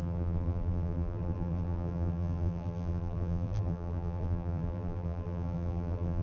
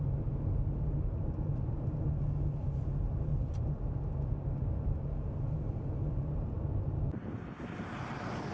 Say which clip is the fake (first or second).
first